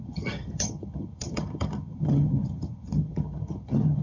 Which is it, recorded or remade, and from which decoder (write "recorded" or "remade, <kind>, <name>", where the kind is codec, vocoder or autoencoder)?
remade, vocoder, HiFi-GAN